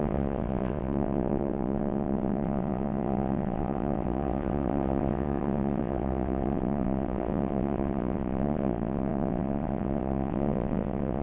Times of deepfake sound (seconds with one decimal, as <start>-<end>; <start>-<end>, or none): 0.0-11.2

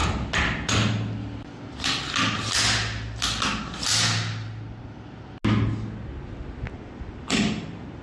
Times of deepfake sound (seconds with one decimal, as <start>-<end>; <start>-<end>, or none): none

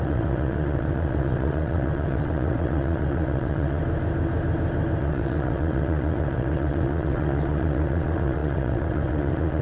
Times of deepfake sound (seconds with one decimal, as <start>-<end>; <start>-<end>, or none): 0.0-3.8; 5.0-9.6

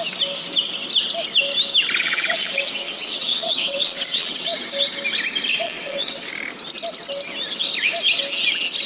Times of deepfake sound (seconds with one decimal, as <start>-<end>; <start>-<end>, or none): 2.0-4.5; 5.5-6.3